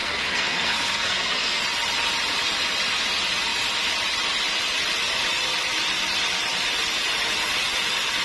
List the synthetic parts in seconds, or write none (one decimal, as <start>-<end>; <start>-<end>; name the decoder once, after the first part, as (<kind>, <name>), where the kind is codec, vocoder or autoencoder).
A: 0.0-1.6 (codec, SNAC)